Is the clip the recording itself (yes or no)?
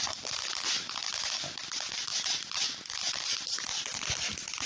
no